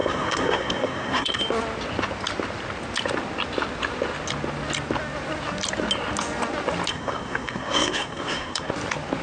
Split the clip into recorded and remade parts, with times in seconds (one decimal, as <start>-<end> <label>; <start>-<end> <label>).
0.0-1.4 remade; 1.4-6.9 recorded; 6.9-8.7 remade; 8.7-9.2 recorded